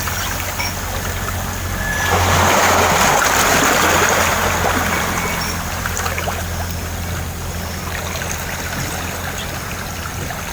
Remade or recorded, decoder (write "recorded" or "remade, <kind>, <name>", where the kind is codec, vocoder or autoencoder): recorded